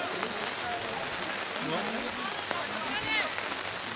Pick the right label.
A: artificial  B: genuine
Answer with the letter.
B